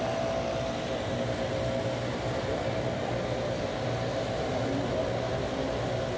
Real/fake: real